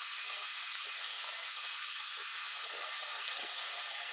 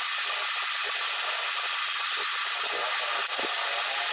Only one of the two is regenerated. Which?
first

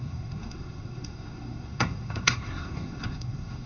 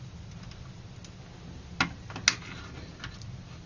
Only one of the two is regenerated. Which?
first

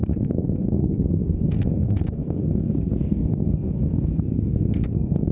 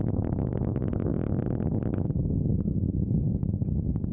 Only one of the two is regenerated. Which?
first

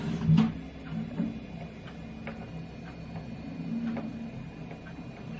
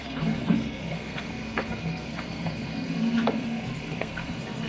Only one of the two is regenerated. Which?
second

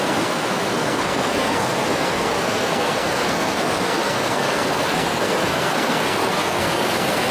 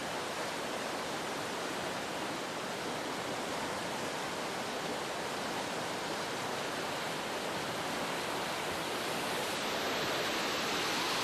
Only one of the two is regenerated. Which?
first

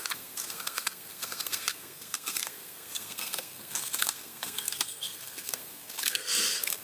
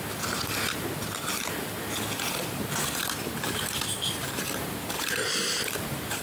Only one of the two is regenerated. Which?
first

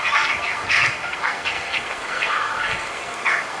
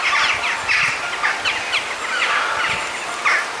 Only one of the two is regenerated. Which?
first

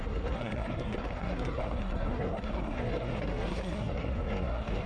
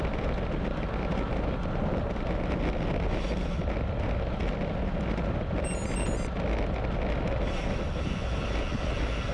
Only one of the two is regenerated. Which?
first